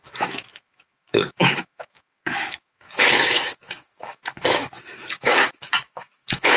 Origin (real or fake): fake